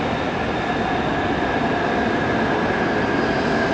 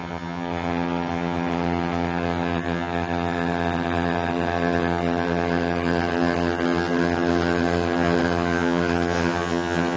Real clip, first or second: first